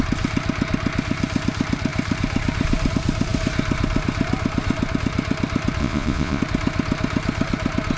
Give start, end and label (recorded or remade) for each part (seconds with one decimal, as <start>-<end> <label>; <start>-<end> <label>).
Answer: 0.0-5.8 recorded; 5.8-6.4 remade; 6.4-8.0 recorded